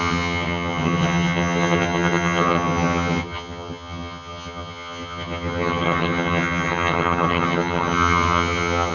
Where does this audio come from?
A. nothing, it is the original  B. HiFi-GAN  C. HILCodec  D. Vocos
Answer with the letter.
B